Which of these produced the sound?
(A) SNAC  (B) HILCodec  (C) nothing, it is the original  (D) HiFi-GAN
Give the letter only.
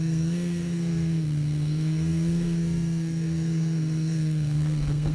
A